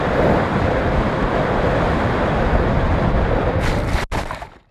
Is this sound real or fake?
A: real